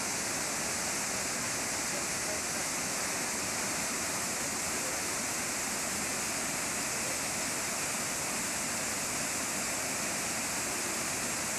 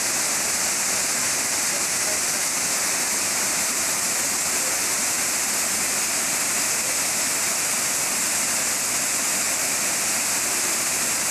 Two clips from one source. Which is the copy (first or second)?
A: second